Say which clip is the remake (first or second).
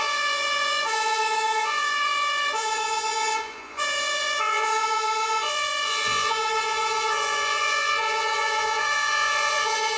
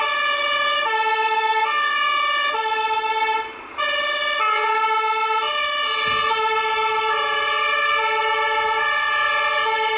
first